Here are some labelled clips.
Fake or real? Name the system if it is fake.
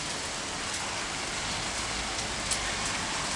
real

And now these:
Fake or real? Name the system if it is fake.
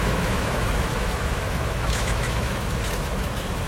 fake, autoencoder, DAC-VAE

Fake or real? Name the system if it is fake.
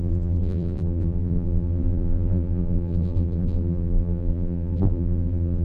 fake, vocoder, BigVGAN v2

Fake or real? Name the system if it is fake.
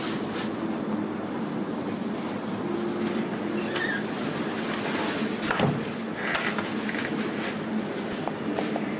real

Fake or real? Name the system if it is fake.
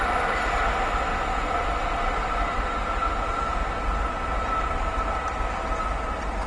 real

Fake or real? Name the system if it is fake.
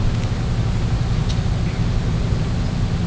real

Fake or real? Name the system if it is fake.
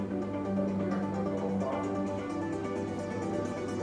real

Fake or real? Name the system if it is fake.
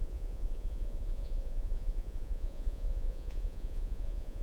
fake, vocoder, Vocos